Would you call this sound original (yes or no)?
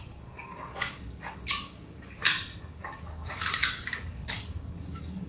no